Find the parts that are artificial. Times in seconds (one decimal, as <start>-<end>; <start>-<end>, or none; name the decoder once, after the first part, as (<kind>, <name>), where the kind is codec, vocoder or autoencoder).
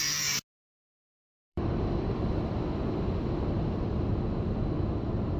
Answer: 0.9-4.1 (vocoder, BigVGAN v2)